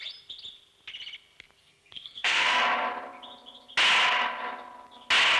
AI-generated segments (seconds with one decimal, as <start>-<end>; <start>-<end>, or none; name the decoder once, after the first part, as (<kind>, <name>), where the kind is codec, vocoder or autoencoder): 1.6-2.6 (codec, SNAC)